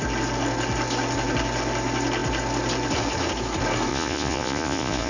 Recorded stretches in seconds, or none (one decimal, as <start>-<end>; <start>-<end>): 0.0-3.9